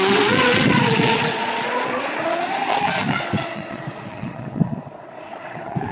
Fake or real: fake